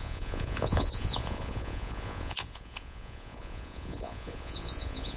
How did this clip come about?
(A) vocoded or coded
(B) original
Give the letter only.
A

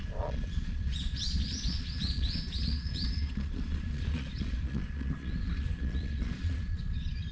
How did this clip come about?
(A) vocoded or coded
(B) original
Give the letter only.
A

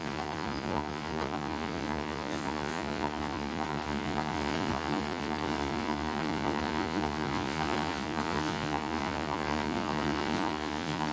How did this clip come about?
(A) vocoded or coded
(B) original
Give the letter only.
A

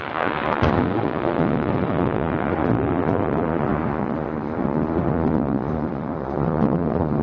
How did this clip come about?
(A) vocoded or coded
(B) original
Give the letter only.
A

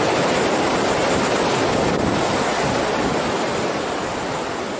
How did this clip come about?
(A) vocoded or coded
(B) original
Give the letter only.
B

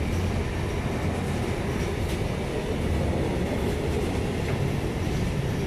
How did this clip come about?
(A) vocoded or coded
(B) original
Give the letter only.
B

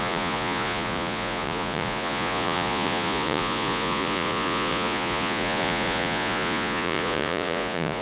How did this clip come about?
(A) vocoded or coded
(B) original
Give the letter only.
A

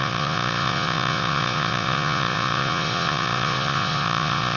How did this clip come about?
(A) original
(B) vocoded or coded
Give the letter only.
B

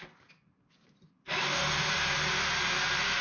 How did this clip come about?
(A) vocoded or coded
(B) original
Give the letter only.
B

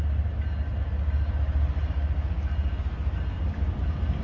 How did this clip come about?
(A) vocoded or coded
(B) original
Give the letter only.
B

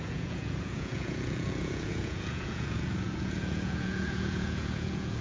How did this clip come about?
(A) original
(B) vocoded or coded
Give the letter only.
B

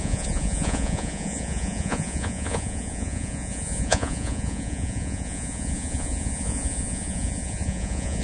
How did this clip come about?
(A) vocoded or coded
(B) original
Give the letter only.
A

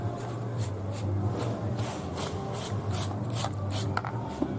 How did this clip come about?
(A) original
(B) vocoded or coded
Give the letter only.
A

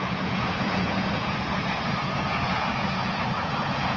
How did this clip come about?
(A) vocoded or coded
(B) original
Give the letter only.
A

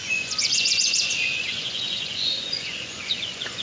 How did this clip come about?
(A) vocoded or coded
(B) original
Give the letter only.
A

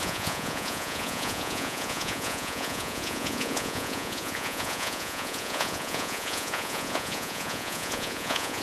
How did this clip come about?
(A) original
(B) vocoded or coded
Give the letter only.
B